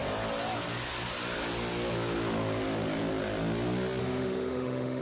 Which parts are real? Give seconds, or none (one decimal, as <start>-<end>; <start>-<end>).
0.0-4.0